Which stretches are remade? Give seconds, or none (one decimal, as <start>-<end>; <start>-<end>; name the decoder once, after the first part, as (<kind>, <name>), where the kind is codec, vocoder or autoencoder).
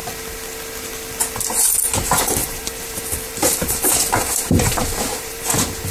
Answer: 2.4-5.5 (vocoder, BigVGAN v2)